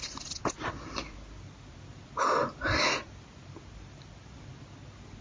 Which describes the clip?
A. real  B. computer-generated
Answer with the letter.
A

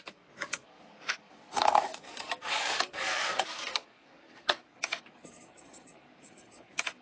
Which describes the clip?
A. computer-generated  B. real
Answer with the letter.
A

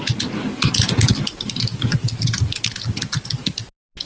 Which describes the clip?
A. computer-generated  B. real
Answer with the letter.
B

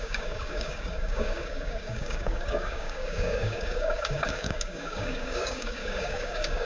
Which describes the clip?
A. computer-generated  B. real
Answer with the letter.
A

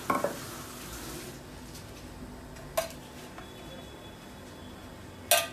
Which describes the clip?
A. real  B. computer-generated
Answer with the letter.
A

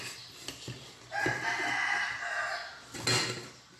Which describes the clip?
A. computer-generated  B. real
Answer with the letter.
B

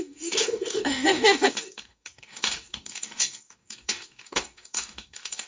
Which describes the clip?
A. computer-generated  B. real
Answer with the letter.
A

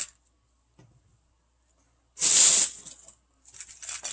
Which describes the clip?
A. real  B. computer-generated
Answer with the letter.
A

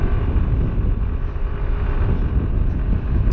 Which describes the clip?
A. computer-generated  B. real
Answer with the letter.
B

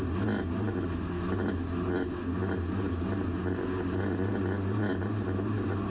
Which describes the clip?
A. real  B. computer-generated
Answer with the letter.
A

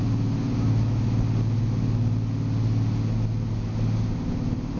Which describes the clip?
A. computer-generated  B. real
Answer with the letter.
B